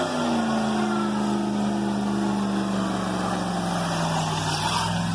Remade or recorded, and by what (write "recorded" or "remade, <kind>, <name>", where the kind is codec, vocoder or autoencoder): recorded